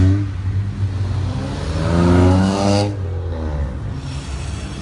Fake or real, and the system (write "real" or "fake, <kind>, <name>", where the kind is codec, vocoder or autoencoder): real